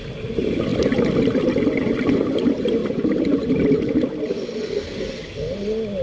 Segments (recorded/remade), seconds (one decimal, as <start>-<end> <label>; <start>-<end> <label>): 0.0-6.0 recorded